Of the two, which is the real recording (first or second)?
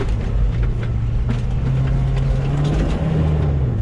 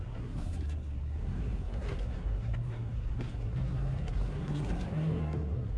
first